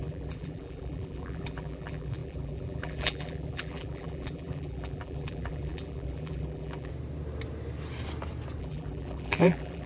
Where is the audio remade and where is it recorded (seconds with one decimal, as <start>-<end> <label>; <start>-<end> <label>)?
0.0-6.9 remade; 6.9-8.6 recorded; 8.6-9.9 remade